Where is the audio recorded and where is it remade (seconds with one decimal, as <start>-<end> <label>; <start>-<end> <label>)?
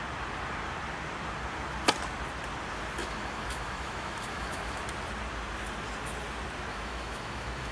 0.0-3.0 recorded; 3.0-4.8 remade; 4.8-6.7 recorded; 6.7-7.7 remade